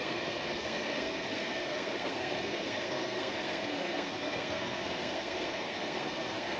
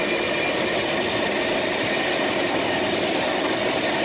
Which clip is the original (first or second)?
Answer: second